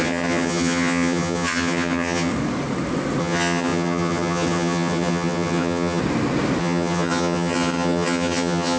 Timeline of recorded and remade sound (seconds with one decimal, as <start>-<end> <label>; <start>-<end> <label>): 0.0-2.3 remade; 2.3-3.2 recorded; 3.2-6.0 remade; 6.0-6.6 recorded; 6.6-8.8 remade